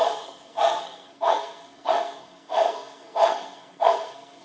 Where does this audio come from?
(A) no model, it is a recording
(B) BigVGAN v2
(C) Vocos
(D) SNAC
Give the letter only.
D